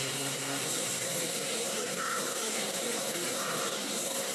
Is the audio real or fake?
fake